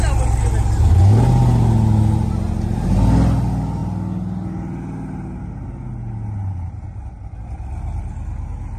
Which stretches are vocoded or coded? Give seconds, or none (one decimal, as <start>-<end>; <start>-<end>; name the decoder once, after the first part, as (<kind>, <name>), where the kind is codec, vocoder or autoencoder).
none